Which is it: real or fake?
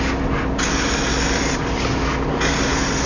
real